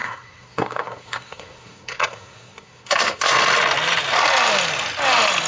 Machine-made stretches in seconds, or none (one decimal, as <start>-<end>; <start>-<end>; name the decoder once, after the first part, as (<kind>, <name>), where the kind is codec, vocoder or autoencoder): 0.0-3.3 (codec, SNAC)

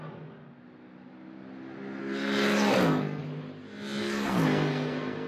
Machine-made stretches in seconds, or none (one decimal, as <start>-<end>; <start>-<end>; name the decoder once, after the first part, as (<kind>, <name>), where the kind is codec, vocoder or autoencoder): 2.0-3.2 (codec, SNAC); 4.0-5.3

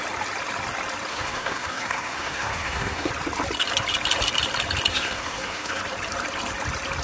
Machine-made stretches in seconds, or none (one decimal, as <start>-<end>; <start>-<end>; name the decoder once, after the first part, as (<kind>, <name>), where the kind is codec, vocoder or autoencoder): 1.1-3.1 (codec, SNAC); 4.9-5.8

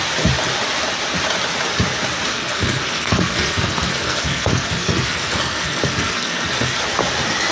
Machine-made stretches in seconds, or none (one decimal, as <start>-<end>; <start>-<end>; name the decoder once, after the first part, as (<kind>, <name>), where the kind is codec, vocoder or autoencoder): 2.3-6.8 (codec, SNAC)

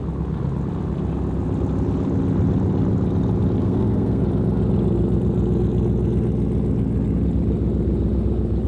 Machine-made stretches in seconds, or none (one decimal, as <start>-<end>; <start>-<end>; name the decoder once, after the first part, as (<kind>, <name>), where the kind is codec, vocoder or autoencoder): 3.6-4.2 (codec, SNAC)

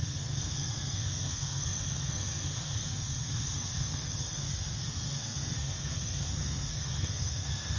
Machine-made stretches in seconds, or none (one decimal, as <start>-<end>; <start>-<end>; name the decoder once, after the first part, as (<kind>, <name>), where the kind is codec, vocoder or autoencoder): 0.0-7.8 (codec, SNAC)

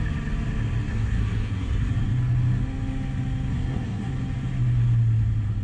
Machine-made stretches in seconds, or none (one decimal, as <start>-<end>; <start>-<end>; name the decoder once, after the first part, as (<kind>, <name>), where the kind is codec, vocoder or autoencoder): 0.9-1.9 (codec, SNAC); 3.5-4.1